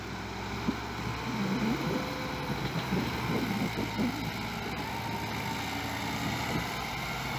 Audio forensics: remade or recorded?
recorded